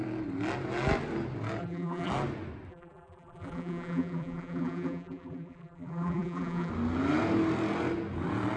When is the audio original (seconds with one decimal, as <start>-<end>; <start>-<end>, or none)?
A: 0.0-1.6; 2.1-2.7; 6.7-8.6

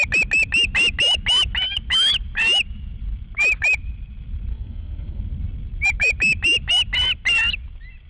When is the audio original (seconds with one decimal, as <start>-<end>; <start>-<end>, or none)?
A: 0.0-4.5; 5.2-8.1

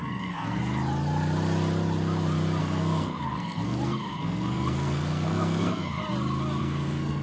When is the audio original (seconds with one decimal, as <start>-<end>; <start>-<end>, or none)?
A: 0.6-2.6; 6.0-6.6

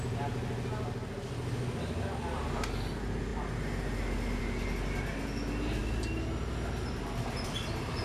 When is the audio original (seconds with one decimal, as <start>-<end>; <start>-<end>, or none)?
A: 0.0-8.0

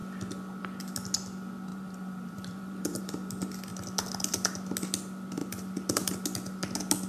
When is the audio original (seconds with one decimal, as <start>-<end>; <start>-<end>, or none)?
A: 0.0-1.7; 3.0-7.1